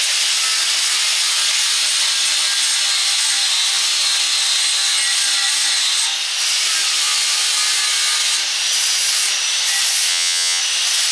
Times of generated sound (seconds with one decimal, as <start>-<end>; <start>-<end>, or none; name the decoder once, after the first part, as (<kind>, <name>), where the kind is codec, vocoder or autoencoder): 10.1-10.6 (vocoder, WaveNeXt)